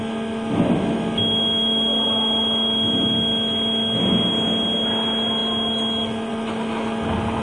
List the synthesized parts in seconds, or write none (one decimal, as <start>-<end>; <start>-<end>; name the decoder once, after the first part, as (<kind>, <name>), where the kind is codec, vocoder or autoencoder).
none